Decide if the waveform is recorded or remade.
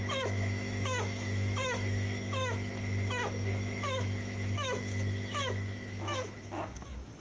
remade